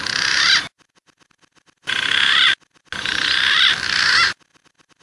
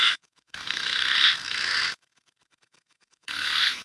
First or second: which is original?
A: first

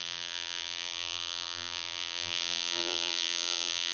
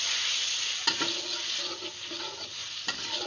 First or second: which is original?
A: second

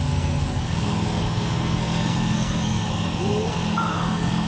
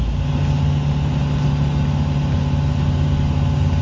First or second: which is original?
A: second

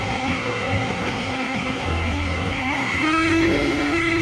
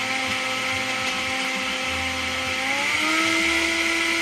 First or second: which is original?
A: second